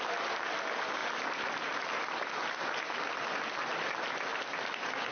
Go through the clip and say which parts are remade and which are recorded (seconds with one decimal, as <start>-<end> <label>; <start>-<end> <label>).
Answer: 0.0-5.1 recorded